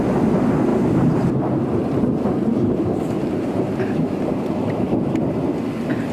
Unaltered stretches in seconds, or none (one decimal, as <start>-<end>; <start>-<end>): 0.0-0.7; 1.4-1.8; 5.2-6.1